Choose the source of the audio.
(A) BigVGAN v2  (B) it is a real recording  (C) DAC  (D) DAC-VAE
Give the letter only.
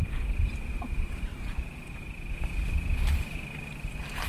B